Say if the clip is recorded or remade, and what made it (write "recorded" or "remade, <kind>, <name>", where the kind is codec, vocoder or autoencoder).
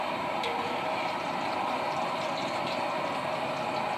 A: recorded